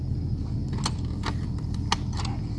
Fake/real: real